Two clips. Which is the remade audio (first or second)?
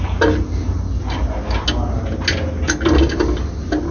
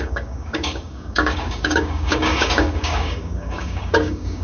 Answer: second